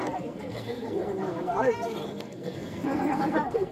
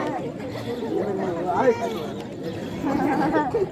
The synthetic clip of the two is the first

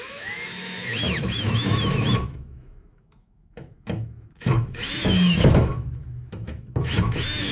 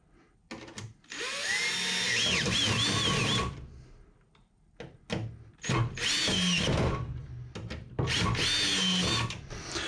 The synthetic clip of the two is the first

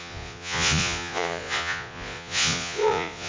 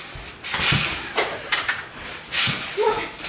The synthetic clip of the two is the first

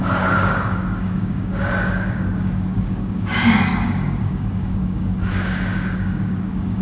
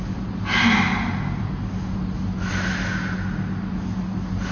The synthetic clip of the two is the first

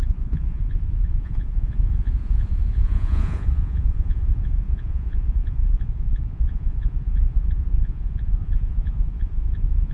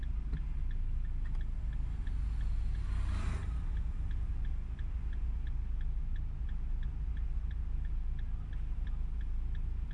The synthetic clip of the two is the first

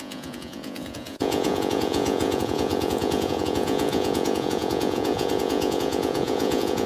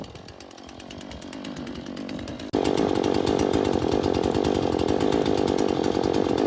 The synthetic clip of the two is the first